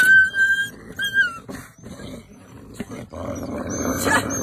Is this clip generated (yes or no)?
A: no